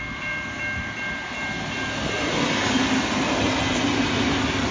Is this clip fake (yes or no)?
no